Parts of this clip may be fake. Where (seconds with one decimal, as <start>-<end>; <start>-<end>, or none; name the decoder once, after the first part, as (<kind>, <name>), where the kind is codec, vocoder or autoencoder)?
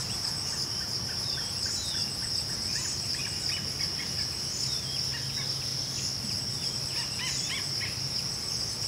none